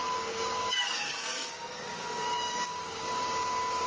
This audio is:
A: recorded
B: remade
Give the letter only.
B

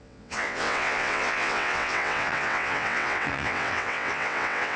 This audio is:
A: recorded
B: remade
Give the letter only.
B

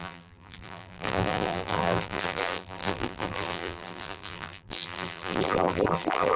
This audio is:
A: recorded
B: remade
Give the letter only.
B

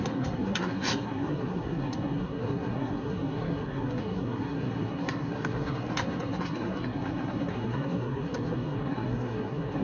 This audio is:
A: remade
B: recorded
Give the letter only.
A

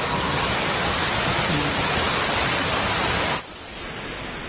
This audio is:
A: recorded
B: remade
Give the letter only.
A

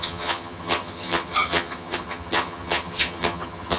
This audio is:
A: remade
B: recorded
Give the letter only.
A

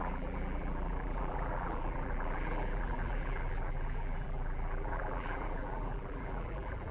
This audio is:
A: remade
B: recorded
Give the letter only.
A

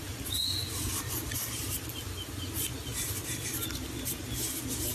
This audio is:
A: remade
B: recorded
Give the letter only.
B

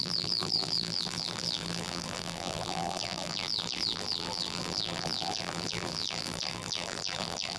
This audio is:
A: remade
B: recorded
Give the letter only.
A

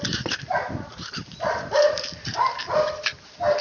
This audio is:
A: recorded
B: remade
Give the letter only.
B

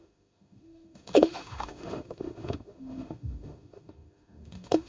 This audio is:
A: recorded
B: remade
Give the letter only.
B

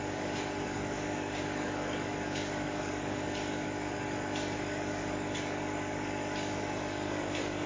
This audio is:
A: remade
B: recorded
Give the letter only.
A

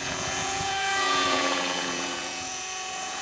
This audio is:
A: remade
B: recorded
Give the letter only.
A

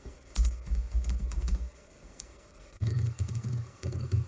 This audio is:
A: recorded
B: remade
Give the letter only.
B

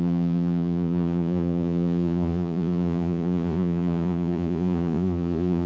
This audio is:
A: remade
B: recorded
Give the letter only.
A